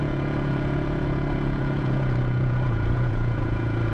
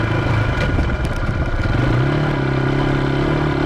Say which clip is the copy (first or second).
first